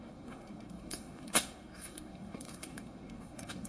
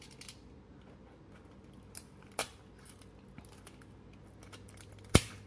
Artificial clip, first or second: first